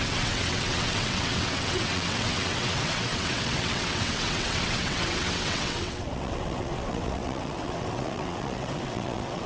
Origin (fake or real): fake